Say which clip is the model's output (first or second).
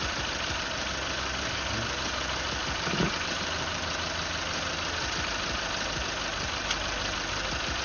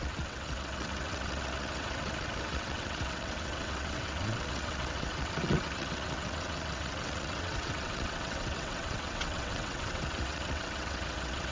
second